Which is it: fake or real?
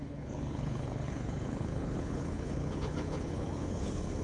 fake